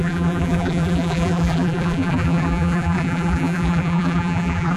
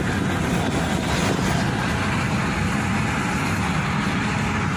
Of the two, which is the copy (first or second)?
first